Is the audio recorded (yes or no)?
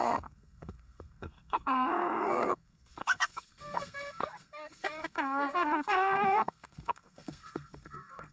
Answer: no